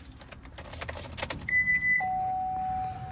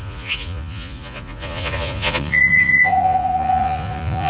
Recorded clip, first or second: first